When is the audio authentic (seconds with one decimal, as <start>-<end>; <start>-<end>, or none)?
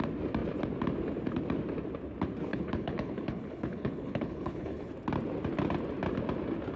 0.0-2.5; 4.9-6.8